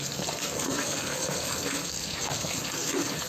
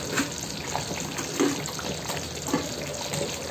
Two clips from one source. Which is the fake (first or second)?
first